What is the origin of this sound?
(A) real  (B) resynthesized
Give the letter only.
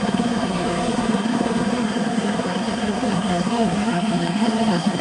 B